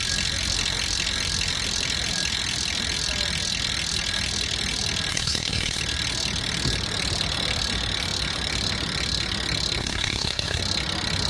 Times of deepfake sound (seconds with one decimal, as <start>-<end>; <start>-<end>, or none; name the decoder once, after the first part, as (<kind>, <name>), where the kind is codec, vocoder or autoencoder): 5.1-5.8 (codec, SNAC); 9.8-10.6